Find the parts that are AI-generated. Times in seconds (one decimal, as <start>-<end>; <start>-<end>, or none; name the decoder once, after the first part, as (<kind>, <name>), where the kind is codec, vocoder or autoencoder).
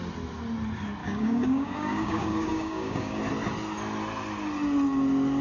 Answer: 1.0-3.2 (codec, DAC)